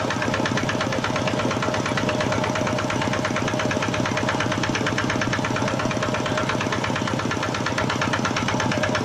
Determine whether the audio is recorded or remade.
recorded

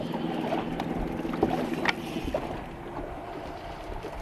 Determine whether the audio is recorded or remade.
recorded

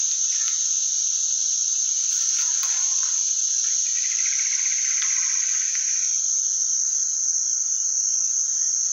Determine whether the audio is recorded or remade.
recorded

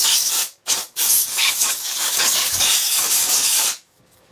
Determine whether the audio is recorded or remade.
remade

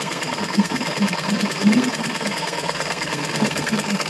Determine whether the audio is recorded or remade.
remade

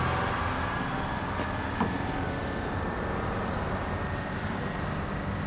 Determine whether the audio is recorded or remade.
recorded